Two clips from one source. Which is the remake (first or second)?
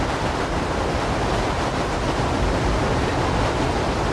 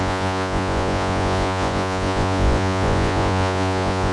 second